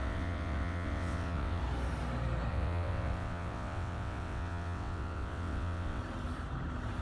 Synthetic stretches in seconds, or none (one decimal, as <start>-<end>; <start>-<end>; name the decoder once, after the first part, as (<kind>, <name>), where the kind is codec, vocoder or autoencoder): 0.0-1.6 (vocoder, WaveNeXt); 2.5-6.0